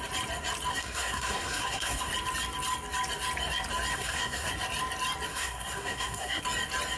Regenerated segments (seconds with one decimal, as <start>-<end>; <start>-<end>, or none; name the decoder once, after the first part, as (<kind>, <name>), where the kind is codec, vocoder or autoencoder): 0.7-2.1 (codec, SNAC); 3.9-4.5; 5.3-6.4